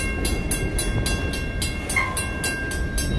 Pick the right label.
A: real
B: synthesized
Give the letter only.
A